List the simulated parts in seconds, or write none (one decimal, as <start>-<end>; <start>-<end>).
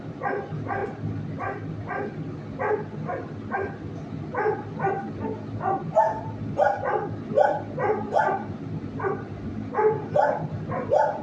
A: none